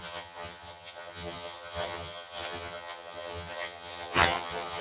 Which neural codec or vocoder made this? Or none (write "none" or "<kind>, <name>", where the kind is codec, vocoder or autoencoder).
vocoder, HiFi-GAN